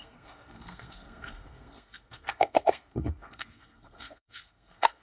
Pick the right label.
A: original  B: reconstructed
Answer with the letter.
B